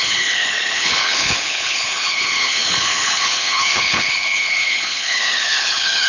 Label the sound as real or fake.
fake